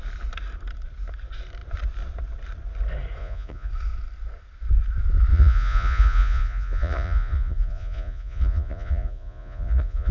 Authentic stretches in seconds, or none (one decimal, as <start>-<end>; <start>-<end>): 0.0-3.2; 3.7-5.3